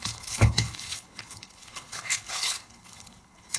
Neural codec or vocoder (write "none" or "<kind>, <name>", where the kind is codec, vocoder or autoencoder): codec, HILCodec